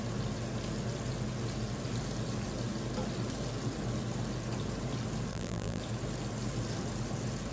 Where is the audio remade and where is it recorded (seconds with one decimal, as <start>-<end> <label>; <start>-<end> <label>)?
0.0-5.3 recorded; 5.3-5.8 remade; 5.8-7.5 recorded